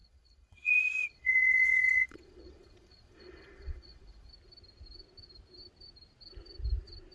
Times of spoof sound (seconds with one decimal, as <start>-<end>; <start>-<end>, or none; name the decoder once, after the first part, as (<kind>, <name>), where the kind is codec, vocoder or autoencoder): 0.0-4.3 (vocoder, Vocos)